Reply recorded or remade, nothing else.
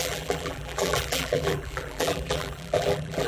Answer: remade